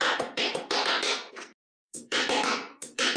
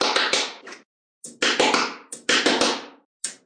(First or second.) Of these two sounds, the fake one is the first